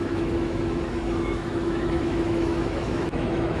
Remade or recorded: remade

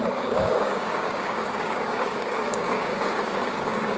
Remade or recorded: remade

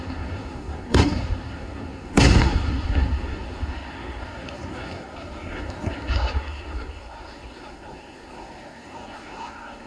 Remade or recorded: remade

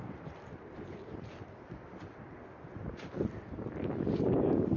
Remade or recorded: recorded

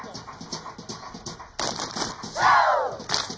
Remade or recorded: recorded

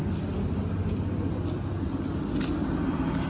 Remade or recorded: recorded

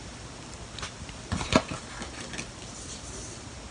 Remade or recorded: recorded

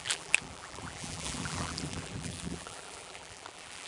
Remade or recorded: remade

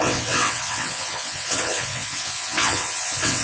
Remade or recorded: remade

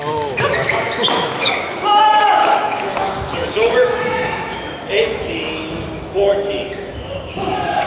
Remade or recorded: remade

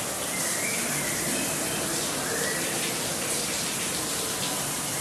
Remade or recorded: recorded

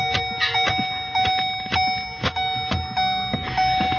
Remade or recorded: recorded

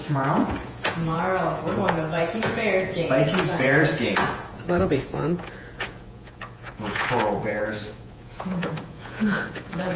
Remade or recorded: remade